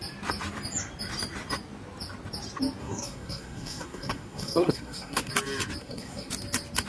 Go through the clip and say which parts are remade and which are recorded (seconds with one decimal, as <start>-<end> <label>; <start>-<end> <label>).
0.0-2.8 recorded; 2.8-5.3 remade; 5.3-5.8 recorded; 5.8-6.3 remade; 6.3-6.9 recorded